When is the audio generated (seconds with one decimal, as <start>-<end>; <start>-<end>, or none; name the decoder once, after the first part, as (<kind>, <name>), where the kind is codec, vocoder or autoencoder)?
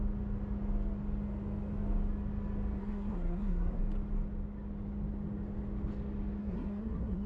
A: 2.8-3.8 (codec, SNAC); 6.4-7.3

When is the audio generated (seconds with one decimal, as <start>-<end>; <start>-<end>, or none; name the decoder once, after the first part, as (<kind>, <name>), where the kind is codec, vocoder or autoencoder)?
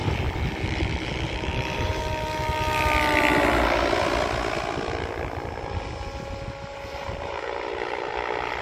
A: 0.0-2.0 (vocoder, BigVGAN v2); 6.7-8.1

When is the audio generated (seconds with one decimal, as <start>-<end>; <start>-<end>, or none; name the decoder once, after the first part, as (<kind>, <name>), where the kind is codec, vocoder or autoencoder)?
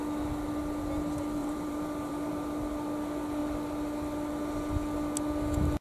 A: 1.4-2.3 (vocoder, BigVGAN v2)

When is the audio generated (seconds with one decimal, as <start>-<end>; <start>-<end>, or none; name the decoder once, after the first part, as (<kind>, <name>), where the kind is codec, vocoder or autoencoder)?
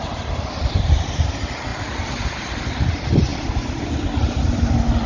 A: none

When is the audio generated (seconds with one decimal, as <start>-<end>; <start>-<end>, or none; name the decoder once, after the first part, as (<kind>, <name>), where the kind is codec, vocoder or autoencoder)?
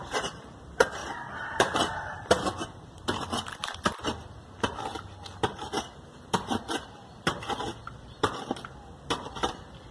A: 1.0-4.8 (vocoder, BigVGAN v2); 7.8-8.7